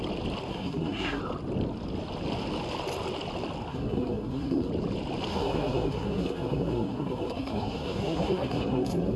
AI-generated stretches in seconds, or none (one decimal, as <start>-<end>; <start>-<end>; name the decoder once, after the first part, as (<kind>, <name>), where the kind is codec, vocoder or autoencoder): 0.5-1.2 (codec, SNAC); 3.7-4.7; 5.3-9.2